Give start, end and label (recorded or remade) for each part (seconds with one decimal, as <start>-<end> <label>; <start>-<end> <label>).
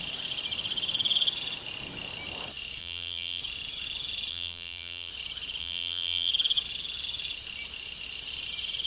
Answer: 0.0-2.8 recorded; 2.8-3.4 remade; 3.4-4.3 recorded; 4.3-5.1 remade; 5.1-5.6 recorded; 5.6-6.3 remade; 6.3-8.9 recorded